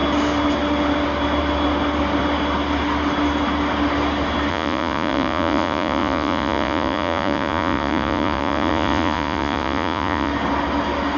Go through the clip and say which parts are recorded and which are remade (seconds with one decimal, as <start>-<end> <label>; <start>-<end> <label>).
0.0-4.5 recorded; 4.5-10.3 remade; 10.3-11.2 recorded